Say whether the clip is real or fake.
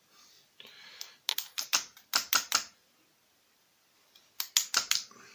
real